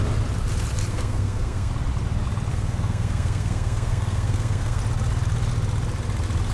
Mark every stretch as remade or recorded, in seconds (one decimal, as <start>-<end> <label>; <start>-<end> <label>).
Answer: 0.0-0.9 recorded; 0.9-1.7 remade; 1.7-2.5 recorded; 2.5-4.8 remade; 4.8-6.5 recorded